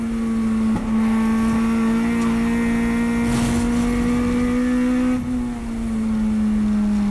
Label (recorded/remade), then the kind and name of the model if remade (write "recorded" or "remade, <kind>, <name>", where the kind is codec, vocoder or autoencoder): recorded